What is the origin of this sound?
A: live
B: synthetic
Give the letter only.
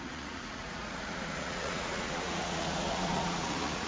B